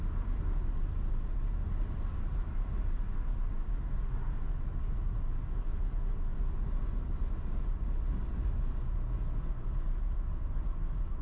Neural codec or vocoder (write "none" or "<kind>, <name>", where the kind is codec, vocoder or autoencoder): none